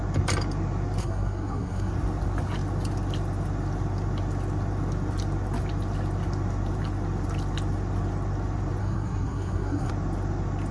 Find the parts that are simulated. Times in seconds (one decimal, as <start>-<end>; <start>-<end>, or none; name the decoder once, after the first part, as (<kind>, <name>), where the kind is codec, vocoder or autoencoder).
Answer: 1.0-1.9 (codec, SNAC); 8.8-9.9